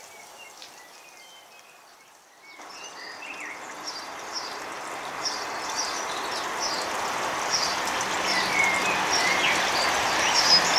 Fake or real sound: real